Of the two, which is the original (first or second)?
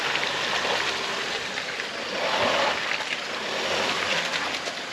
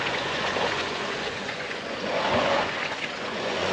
first